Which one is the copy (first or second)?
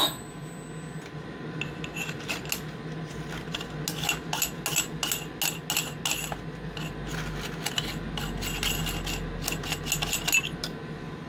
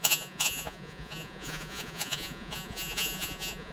second